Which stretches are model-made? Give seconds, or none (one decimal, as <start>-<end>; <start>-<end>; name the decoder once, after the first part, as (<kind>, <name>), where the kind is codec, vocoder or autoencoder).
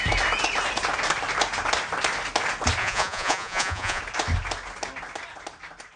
2.8-4.0 (vocoder, Vocos)